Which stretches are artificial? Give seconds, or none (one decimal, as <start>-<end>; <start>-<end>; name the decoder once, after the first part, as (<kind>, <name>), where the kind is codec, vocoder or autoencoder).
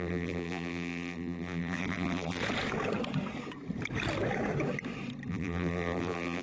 0.0-2.4 (vocoder, BigVGAN v2); 5.3-6.4